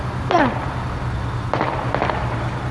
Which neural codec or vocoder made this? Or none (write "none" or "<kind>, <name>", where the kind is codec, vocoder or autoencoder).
none